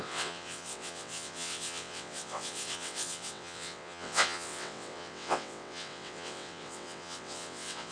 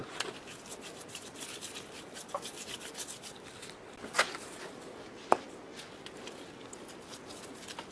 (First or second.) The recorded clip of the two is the second